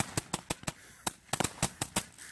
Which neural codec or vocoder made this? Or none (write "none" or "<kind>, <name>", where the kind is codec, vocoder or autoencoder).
none